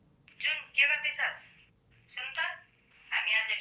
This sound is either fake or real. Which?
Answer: fake